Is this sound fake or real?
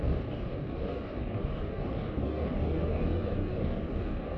fake